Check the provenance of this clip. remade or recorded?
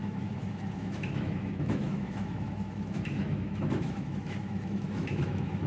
remade